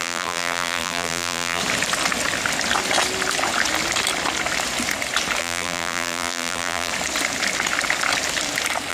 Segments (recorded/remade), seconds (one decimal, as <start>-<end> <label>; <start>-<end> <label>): 0.0-1.6 remade; 1.6-5.4 recorded; 5.4-6.9 remade; 6.9-8.9 recorded